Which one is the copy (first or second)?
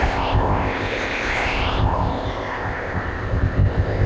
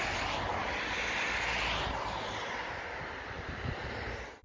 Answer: first